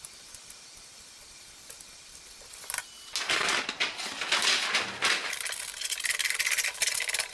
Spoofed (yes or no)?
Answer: no